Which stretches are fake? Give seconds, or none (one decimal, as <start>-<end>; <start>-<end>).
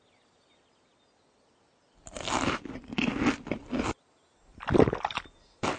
none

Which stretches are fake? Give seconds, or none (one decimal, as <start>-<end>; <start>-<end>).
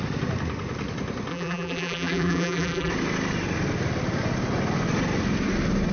1.3-2.9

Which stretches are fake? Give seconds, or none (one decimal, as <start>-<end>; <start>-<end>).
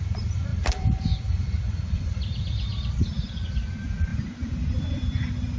0.0-5.6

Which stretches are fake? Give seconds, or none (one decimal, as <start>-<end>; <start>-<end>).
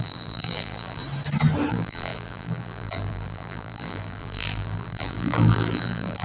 0.0-1.0; 1.7-6.2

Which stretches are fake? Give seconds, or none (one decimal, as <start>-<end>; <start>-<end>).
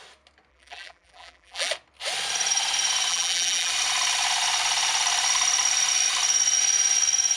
0.5-1.7; 3.1-3.7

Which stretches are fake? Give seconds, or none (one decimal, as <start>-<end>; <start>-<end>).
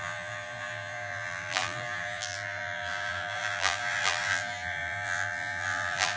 0.0-6.2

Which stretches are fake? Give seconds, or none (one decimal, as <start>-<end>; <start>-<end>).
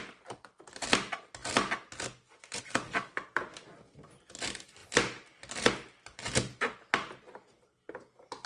none